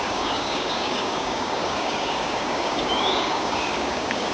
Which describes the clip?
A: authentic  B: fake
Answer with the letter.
B